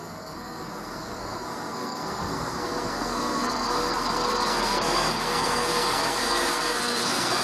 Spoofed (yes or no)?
yes